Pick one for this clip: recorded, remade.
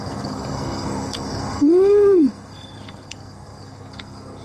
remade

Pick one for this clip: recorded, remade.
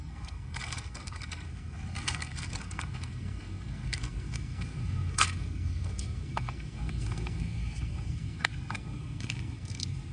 remade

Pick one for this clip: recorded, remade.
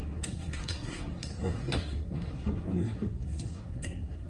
remade